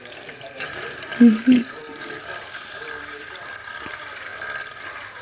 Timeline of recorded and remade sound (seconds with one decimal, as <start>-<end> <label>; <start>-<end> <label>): 0.0-1.8 remade; 1.8-2.8 recorded; 2.8-4.3 remade; 4.3-4.8 recorded; 4.8-5.2 remade